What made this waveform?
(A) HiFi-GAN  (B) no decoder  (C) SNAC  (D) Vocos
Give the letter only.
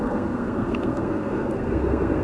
C